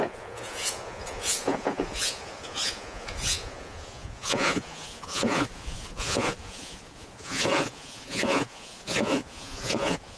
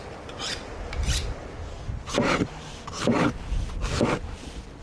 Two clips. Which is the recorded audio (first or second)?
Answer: second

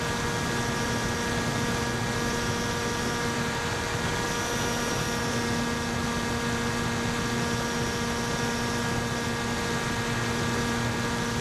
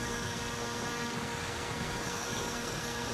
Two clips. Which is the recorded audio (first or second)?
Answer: first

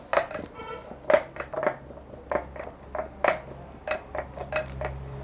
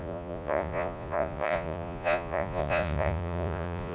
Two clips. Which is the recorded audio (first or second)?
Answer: first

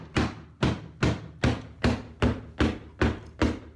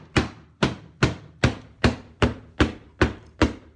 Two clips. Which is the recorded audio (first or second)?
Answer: first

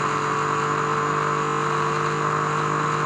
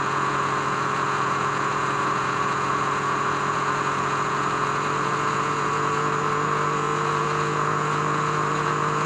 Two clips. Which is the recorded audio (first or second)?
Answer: first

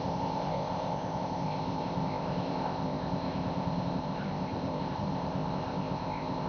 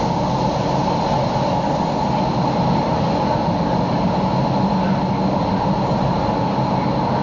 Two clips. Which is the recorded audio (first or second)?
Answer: second